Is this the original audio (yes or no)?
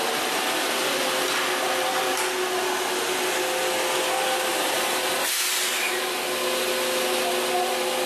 yes